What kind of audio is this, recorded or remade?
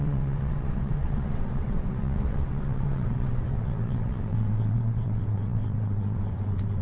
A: remade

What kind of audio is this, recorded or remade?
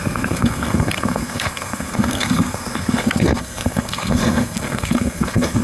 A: remade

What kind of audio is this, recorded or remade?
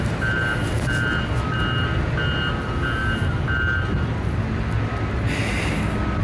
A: recorded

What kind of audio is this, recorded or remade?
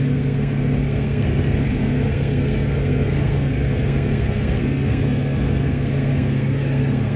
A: remade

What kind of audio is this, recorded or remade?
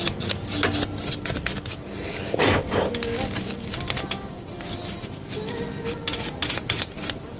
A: recorded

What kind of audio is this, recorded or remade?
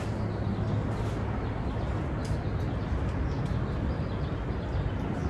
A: recorded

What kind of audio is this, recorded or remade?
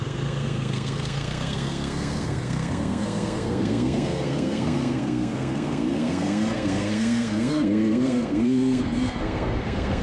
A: remade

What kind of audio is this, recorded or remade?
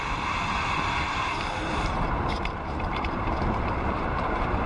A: remade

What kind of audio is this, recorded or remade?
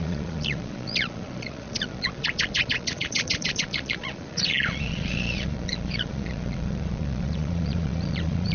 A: remade